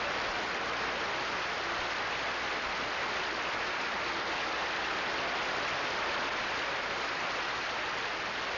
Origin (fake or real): real